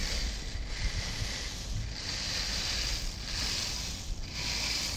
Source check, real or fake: real